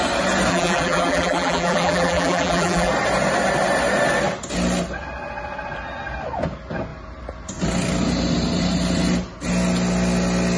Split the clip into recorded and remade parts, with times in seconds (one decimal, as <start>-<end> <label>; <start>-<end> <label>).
0.0-0.5 recorded; 0.5-2.9 remade; 2.9-10.6 recorded